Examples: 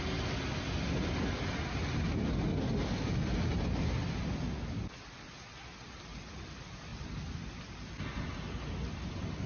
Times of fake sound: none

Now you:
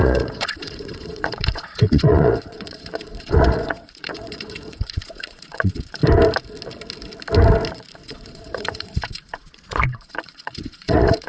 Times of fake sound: 0.0-6.0 (vocoder, Vocos); 7.7-11.3

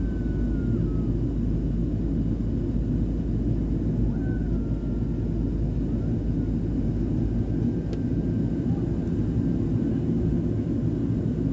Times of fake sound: none

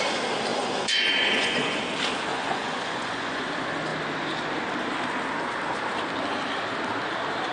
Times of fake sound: 0.5-1.8 (vocoder, Vocos); 2.3-3.5

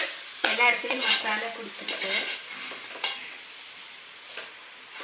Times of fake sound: 0.4-1.1 (vocoder, WaveNeXt)

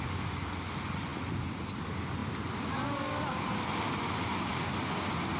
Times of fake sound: none

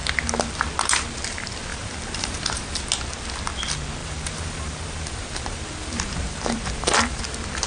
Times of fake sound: 1.7-2.8 (vocoder, BigVGAN v2); 4.0-7.2

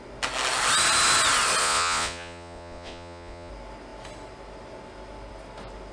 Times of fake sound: 1.6-3.5 (vocoder, Vocos)